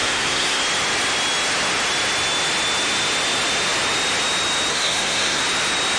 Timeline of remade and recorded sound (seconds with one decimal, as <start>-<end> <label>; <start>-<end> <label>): 0.0-0.6 remade; 0.6-4.7 recorded; 4.7-5.4 remade; 5.4-6.0 recorded